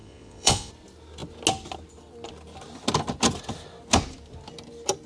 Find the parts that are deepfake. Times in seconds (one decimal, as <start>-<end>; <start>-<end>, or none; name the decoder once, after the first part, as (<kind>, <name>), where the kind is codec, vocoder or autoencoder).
0.0-0.7 (vocoder, Vocos)